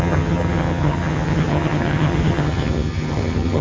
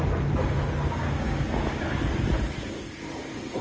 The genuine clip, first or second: second